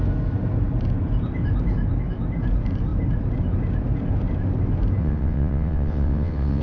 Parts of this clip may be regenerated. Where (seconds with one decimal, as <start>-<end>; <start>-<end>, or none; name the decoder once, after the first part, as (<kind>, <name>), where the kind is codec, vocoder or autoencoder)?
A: 5.0-6.6 (vocoder, WaveNeXt)